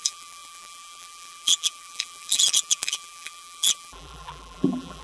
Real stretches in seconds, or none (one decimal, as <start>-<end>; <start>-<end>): none

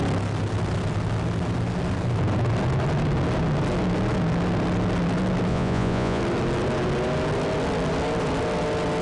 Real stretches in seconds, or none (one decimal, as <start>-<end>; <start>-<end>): 0.0-5.5; 6.2-9.0

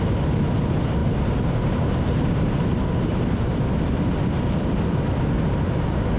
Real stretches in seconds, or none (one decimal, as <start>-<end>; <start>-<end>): 0.0-1.0; 4.7-6.2

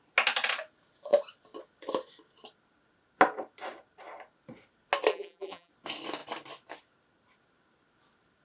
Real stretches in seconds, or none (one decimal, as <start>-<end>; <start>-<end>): 0.0-5.1; 5.7-8.4

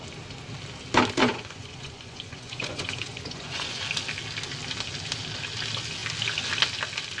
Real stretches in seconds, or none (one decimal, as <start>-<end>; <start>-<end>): 0.0-1.2; 3.8-7.2

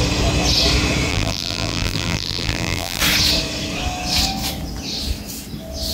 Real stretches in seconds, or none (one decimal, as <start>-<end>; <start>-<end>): 0.0-1.1; 3.0-5.9

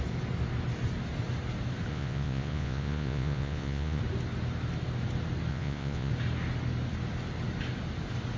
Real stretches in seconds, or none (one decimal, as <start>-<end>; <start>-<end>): 0.0-1.9; 4.0-5.5; 6.1-8.4